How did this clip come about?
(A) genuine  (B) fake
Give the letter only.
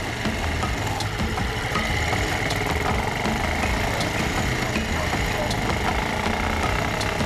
A